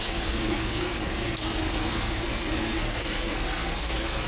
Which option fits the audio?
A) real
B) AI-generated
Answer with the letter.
B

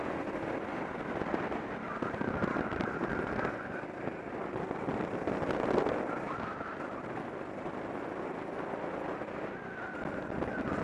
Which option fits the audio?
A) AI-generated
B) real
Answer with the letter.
B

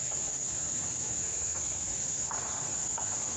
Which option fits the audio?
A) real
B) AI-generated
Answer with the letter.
B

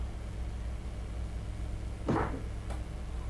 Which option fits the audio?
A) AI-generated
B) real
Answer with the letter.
B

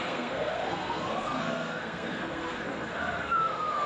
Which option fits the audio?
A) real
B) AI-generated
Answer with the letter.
B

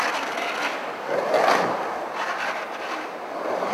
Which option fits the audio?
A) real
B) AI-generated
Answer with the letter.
A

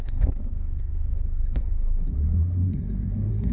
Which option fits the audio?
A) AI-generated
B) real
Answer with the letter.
A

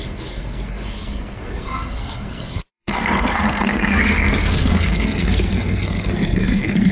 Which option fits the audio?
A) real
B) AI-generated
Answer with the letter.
B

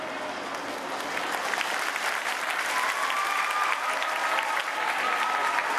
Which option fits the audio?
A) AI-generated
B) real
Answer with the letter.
B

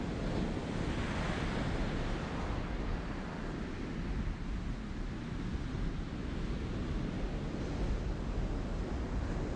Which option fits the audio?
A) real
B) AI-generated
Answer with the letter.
A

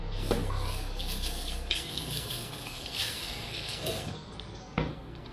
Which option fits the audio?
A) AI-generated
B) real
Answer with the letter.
A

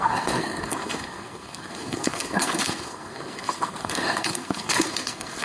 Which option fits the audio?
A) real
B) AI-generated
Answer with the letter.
B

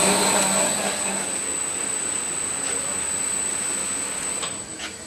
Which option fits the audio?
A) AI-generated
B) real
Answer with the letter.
B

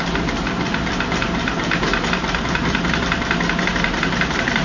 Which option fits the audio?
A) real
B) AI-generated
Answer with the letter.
A